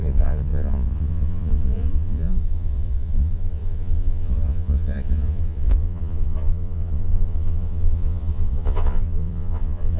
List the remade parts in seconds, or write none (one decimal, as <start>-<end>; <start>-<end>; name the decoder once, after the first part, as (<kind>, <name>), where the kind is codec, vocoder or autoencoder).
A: 0.0-10.0 (vocoder, Vocos)